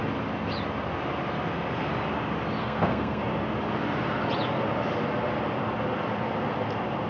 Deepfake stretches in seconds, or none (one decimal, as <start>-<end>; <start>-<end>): 2.6-3.2